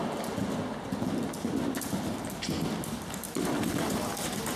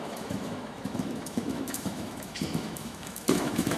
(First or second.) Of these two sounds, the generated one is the second